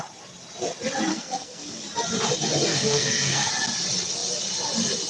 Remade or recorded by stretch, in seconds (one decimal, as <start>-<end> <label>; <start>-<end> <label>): 0.0-1.1 recorded; 1.1-1.8 remade; 1.8-2.7 recorded; 2.7-3.5 remade; 3.5-5.1 recorded